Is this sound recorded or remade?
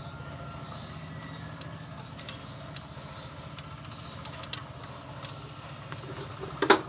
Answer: recorded